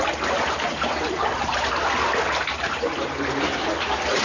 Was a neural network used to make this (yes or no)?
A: no